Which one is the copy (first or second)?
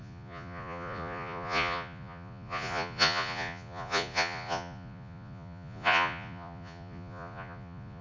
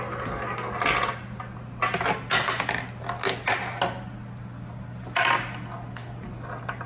first